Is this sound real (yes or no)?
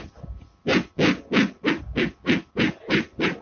yes